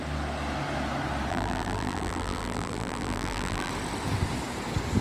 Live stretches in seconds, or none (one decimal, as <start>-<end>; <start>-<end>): 0.0-1.3; 3.7-5.0